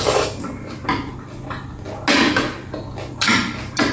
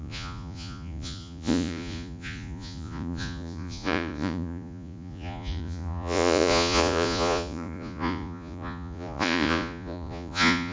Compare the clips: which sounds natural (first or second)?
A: first